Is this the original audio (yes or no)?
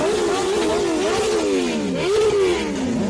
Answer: yes